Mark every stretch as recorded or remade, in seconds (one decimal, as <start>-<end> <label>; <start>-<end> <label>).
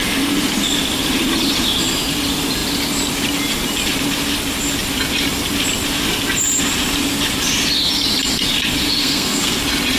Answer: 0.0-9.0 recorded; 9.0-9.6 remade; 9.6-10.0 recorded